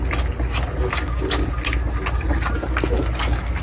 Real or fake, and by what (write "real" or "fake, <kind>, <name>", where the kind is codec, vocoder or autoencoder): real